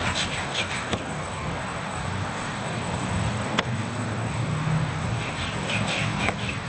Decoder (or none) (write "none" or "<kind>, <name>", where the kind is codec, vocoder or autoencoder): codec, DAC